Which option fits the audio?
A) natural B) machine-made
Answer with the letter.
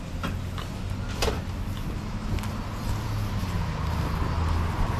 A